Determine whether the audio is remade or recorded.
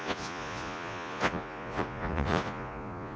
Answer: remade